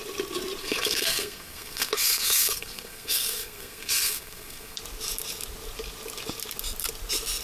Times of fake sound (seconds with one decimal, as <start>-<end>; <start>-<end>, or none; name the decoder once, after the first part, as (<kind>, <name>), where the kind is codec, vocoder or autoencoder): 0.6-4.8 (codec, SNAC)